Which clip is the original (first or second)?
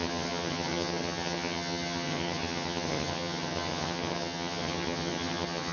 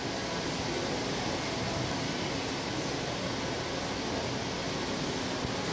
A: second